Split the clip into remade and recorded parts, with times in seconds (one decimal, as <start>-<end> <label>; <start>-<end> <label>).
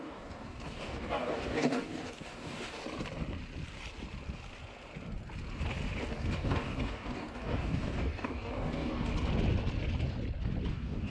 0.0-2.8 remade; 2.8-6.1 recorded; 6.1-9.1 remade; 9.1-10.7 recorded; 10.7-11.1 remade